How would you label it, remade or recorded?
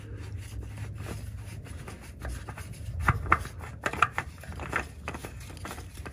recorded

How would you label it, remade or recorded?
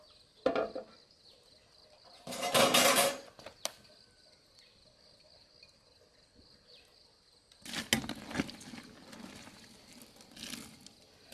recorded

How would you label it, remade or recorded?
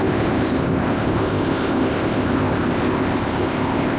remade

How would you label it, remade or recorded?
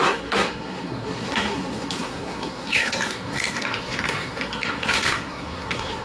remade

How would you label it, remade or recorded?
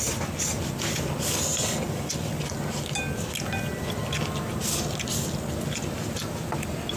recorded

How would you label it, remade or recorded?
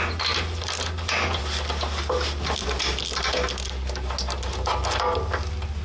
recorded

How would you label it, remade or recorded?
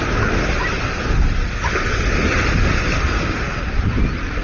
recorded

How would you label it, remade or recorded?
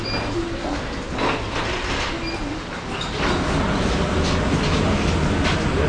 recorded